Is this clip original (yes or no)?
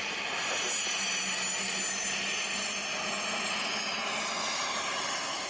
yes